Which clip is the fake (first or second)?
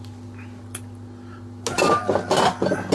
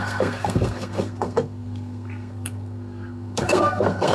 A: second